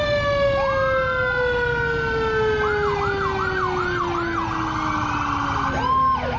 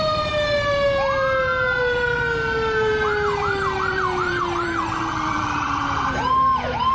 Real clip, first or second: first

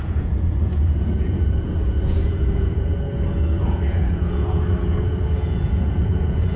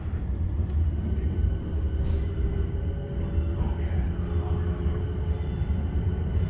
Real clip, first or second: second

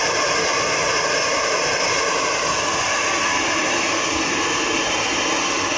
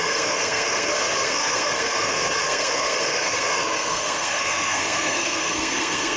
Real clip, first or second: first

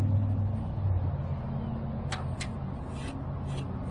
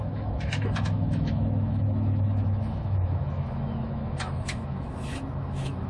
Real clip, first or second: first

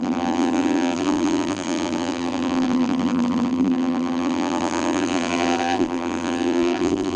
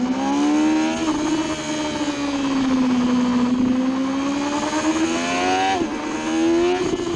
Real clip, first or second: second